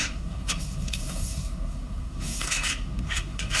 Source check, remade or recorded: remade